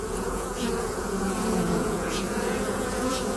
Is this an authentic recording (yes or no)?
no